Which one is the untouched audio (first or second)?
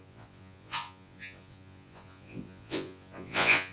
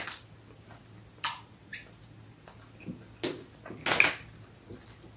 second